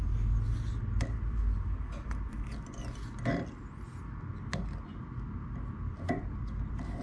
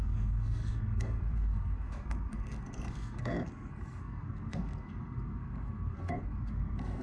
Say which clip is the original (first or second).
first